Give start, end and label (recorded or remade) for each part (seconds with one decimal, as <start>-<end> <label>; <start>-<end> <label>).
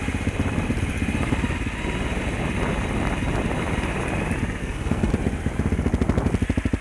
0.0-4.6 recorded; 4.6-5.1 remade; 5.1-6.8 recorded